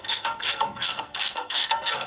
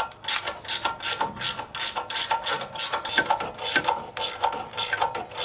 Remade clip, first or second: first